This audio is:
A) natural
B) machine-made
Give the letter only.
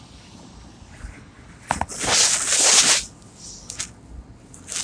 A